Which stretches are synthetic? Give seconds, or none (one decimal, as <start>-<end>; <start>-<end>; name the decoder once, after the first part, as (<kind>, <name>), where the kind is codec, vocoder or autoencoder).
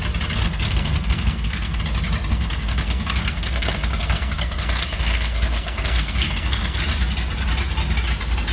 0.4-1.8 (codec, SNAC); 2.3-6.8